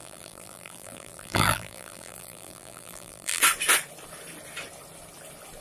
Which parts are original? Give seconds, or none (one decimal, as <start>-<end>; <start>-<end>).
3.4-5.6